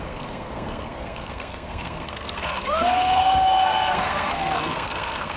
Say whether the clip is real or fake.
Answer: fake